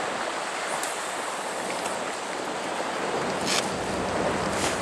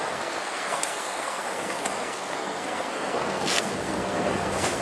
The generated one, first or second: second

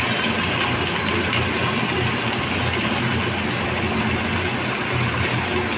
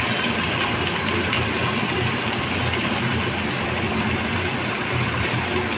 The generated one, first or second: second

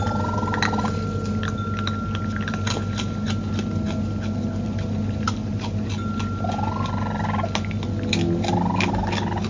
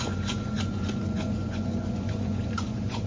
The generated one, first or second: second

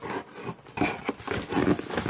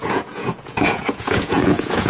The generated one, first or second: second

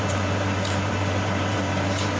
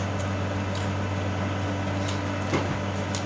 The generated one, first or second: first